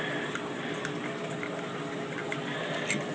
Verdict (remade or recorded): recorded